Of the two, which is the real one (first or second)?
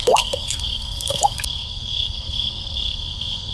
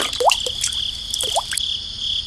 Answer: second